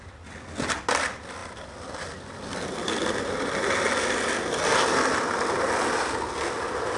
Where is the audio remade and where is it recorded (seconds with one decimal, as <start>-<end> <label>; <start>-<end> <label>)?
0.0-7.0 recorded